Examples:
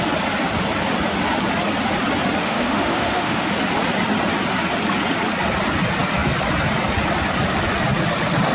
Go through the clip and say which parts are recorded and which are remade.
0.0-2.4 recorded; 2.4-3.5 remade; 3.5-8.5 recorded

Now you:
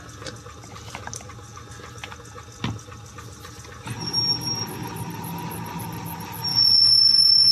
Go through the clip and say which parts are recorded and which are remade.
0.0-6.5 recorded; 6.5-7.5 remade